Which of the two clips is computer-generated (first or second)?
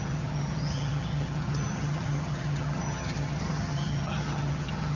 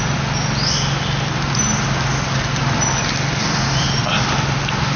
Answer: first